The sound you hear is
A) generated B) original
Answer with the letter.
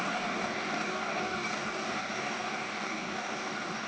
A